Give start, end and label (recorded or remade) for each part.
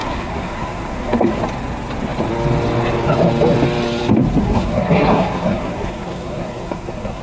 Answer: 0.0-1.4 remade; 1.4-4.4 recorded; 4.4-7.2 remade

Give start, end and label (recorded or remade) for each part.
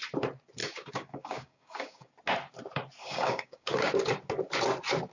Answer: 0.0-0.6 recorded; 0.6-2.1 remade; 2.1-3.0 recorded; 3.0-3.9 remade; 3.9-5.1 recorded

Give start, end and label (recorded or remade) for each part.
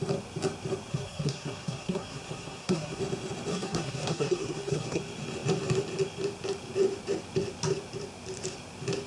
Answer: 0.0-0.9 recorded; 0.9-3.0 remade; 3.0-3.5 recorded; 3.5-5.0 remade; 5.0-9.1 recorded